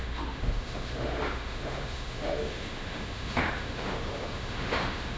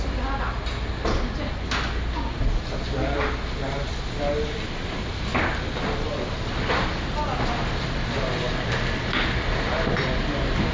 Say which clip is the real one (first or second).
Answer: second